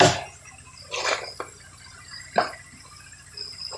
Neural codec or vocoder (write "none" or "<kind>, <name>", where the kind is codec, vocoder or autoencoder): none